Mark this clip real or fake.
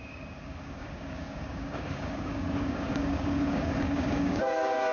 fake